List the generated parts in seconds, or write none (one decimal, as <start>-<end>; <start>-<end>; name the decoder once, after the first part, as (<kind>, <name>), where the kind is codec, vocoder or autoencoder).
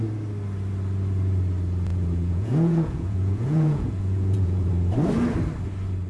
1.9-4.7 (vocoder, Vocos)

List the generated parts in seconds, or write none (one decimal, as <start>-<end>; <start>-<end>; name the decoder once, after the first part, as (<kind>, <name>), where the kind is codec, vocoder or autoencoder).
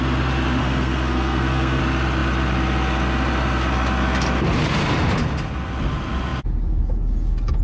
0.6-1.8 (codec, SNAC)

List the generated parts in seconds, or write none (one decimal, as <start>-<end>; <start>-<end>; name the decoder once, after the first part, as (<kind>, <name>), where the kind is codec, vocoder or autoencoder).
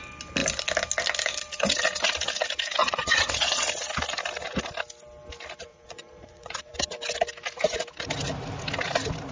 2.8-3.6 (vocoder, Vocos); 5.7-6.6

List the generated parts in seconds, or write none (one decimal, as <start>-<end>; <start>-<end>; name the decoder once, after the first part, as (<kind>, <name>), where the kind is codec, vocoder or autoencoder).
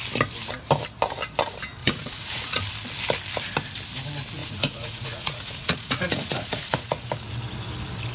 1.8-2.6 (vocoder, Vocos); 4.4-6.9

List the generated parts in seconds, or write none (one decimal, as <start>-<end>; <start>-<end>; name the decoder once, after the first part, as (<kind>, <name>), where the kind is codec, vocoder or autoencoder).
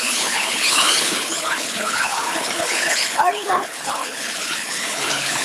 0.0-5.4 (codec, HILCodec)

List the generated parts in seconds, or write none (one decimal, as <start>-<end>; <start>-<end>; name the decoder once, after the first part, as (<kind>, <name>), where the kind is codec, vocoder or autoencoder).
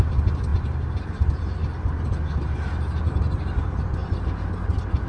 none